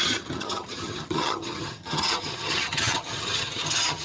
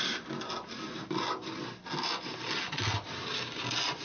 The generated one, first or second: first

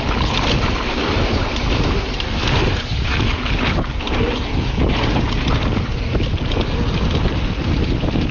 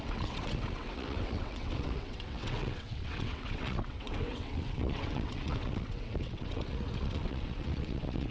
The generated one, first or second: second